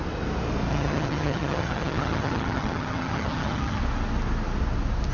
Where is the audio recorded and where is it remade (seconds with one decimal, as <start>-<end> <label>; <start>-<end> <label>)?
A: 0.0-0.7 recorded; 0.7-3.8 remade; 3.8-5.1 recorded